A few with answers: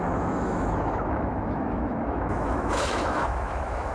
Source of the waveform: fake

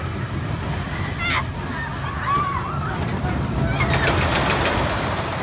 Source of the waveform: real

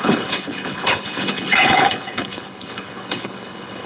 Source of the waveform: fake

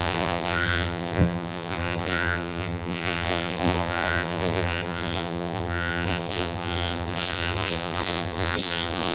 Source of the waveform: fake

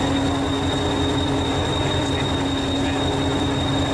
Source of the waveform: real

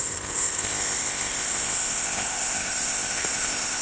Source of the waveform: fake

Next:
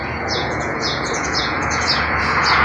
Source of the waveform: fake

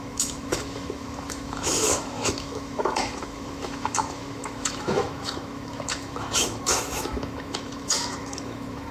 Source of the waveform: fake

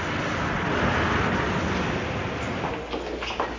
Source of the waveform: real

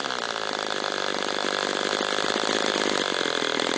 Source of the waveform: real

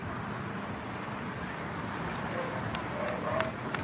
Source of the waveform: real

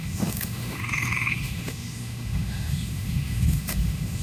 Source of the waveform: fake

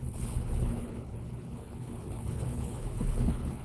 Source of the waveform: fake